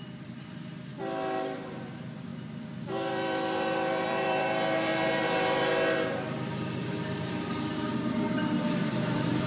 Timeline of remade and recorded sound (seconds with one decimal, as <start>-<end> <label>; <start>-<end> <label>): 0.0-0.9 remade; 0.9-1.4 recorded; 1.4-2.3 remade; 2.3-2.8 recorded; 2.8-4.9 remade; 4.9-8.9 recorded; 8.9-9.5 remade